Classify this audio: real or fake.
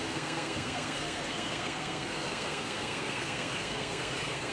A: fake